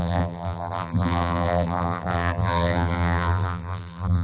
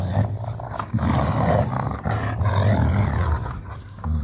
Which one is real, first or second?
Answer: second